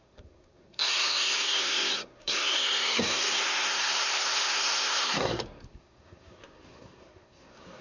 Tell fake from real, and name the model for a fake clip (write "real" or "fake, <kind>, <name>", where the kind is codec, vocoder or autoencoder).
fake, codec, SNAC